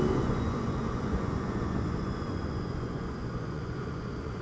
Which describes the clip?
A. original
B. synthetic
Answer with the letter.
B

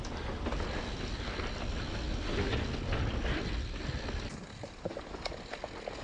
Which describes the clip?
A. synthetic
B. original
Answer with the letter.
B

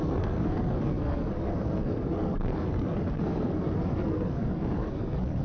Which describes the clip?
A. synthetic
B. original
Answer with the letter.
A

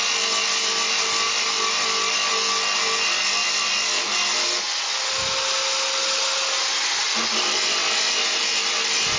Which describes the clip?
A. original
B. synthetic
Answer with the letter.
A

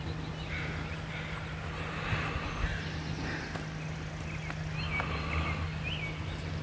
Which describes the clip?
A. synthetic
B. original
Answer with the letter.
B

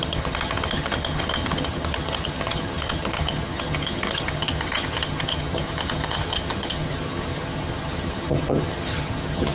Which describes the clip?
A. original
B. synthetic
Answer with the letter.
B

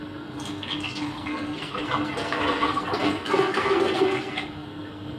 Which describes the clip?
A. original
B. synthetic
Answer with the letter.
B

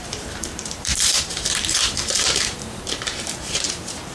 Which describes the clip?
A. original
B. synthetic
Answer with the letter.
B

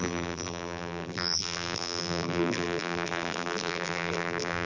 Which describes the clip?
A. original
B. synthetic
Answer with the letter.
B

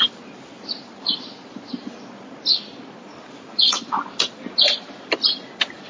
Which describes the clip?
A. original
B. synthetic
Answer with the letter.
A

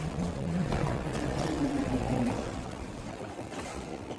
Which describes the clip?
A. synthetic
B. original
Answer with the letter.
A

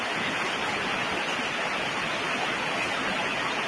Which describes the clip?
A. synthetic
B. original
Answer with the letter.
B